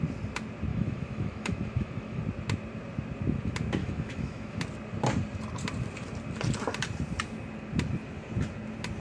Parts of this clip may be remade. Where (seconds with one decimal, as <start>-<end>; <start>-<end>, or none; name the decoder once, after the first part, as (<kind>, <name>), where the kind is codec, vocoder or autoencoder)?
0.7-2.2 (autoencoder, DAC-VAE); 3.8-4.6